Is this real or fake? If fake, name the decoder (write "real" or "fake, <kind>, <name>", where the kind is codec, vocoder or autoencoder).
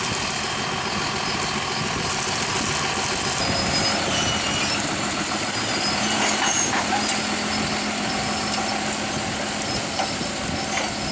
real